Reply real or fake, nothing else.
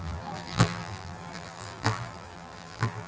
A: fake